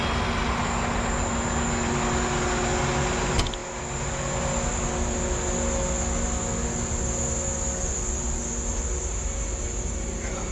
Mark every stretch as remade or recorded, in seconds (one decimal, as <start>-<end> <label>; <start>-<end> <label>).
0.0-10.5 recorded